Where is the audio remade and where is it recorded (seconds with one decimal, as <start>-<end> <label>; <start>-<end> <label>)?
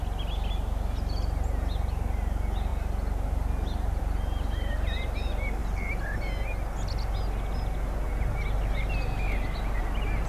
0.0-10.3 recorded